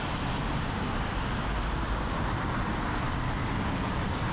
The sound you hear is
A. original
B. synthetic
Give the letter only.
A